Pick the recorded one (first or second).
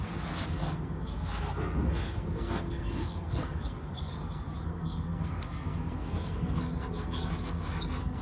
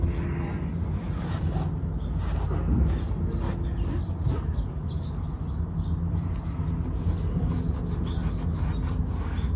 second